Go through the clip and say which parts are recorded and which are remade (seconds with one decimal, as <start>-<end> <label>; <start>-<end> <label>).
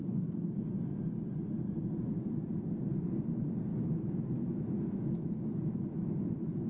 0.0-3.7 recorded; 3.7-5.1 remade; 5.1-6.7 recorded